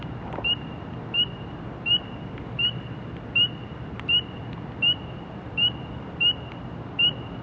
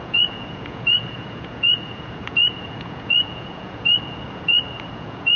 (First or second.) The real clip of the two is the first